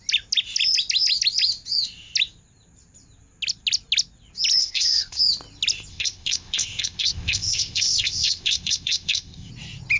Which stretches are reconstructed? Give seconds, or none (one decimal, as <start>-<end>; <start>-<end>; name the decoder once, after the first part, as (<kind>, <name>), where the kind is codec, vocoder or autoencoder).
4.6-5.2 (codec, ZipCodec); 5.9-9.5